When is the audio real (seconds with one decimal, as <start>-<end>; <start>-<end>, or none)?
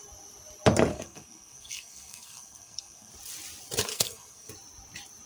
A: 0.0-0.9; 3.1-3.9; 4.5-5.3